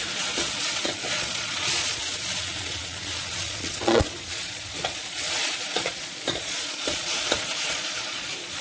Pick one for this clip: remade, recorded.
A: remade